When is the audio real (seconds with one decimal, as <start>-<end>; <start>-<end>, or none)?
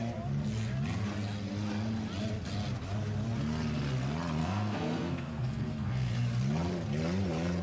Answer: 0.0-4.4; 6.1-7.6